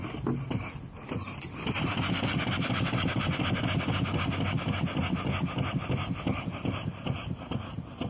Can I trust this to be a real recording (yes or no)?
yes